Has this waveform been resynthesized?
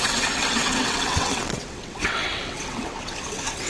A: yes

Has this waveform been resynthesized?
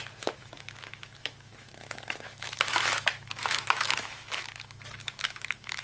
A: yes